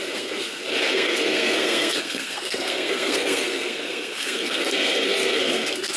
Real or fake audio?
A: fake